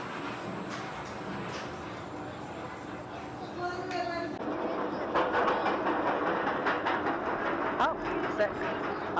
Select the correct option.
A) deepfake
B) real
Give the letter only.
B